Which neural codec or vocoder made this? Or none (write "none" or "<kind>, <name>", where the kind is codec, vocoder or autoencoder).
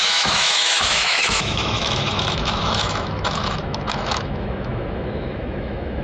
autoencoder, DAC-VAE